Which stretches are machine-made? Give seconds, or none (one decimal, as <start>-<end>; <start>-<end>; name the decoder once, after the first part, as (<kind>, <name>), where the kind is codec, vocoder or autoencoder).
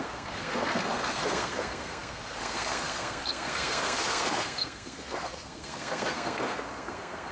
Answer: 0.0-7.3 (codec, SNAC)